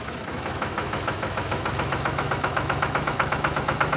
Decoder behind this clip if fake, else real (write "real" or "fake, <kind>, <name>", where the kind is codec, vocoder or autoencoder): fake, autoencoder, DAC-VAE